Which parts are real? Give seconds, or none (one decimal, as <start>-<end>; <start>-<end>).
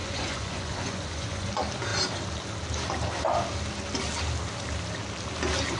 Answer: 1.5-5.8